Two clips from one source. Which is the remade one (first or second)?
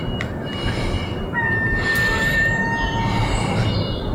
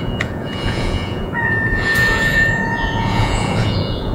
second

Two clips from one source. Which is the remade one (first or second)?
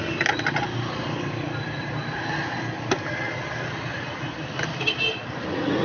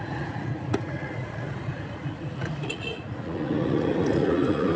second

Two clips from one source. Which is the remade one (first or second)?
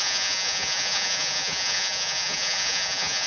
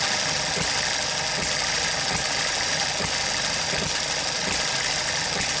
first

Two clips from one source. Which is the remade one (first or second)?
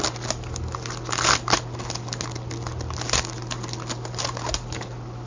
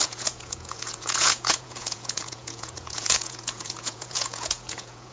second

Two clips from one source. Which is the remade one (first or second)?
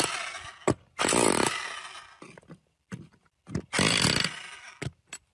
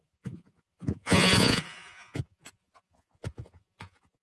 second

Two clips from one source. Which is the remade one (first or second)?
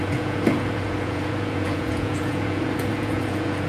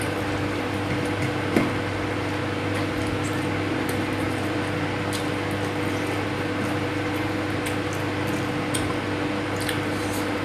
first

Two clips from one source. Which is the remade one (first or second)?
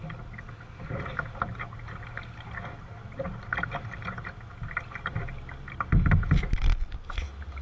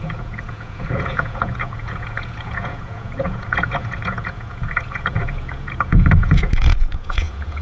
second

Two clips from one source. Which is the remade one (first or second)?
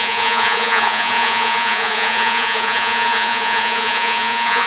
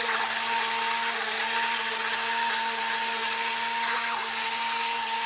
first